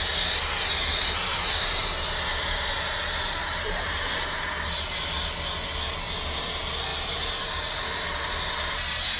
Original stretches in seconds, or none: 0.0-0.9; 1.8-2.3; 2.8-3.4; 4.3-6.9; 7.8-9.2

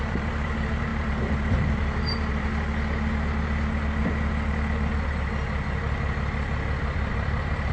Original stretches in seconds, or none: 2.5-7.1

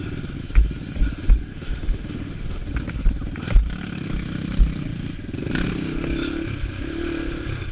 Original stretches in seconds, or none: 0.0-1.5; 2.7-7.7